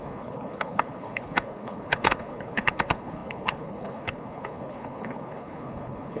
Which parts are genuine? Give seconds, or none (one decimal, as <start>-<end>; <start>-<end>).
none